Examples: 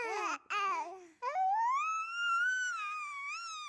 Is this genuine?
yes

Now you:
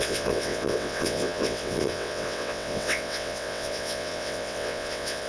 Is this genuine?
no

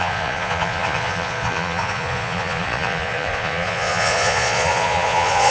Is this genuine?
no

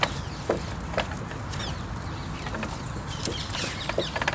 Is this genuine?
yes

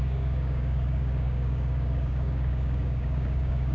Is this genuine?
no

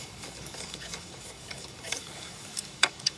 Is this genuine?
no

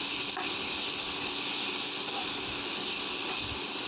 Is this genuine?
yes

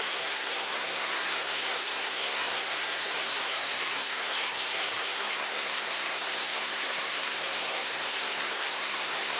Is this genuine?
no